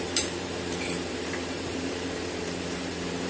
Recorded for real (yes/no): no